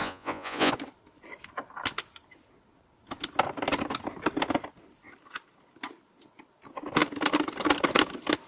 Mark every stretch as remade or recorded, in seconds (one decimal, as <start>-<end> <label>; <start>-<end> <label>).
0.0-0.7 remade; 0.7-8.5 recorded